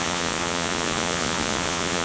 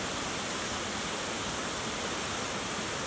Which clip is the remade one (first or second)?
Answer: first